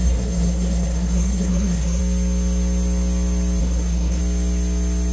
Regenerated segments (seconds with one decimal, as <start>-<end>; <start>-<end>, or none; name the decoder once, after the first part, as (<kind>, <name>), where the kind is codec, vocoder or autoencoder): 0.0-2.0 (codec, SNAC); 3.6-4.2